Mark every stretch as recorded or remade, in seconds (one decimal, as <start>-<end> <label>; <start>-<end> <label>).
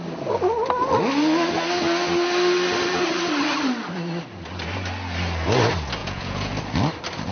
0.0-6.0 recorded; 6.0-6.5 remade; 6.5-7.3 recorded